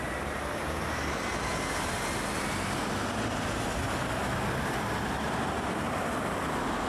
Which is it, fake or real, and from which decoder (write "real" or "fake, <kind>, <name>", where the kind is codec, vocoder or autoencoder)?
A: real